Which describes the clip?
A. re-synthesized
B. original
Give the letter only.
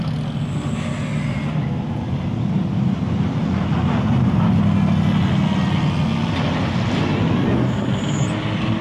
B